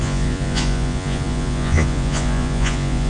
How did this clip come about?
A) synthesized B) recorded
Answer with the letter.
A